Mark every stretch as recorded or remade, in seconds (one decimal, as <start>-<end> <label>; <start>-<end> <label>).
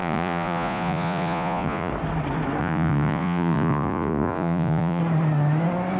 0.0-1.9 remade; 1.9-2.6 recorded; 2.6-5.0 remade; 5.0-6.0 recorded